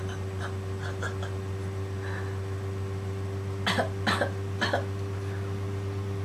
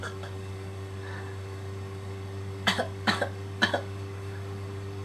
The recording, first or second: first